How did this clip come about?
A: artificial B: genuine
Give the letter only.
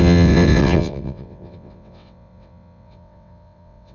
A